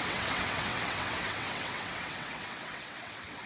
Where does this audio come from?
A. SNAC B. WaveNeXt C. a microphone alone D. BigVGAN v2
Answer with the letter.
B